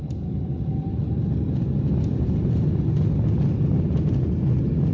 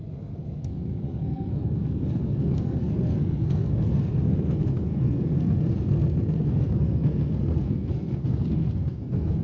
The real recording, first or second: first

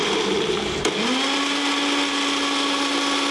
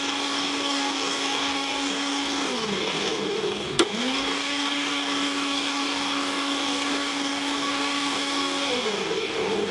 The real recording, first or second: first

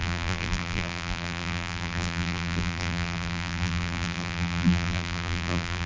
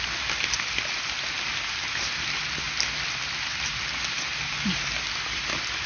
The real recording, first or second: second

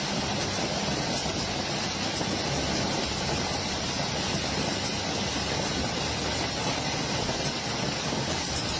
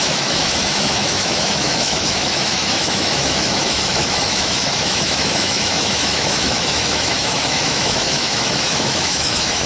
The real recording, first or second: first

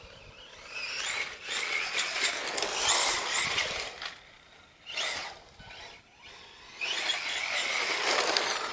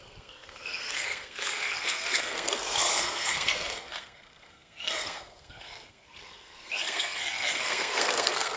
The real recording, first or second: first